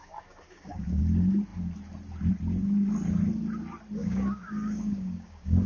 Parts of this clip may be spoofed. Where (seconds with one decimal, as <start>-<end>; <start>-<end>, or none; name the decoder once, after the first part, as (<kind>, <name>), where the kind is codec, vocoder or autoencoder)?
0.0-1.0 (codec, DAC); 4.0-5.7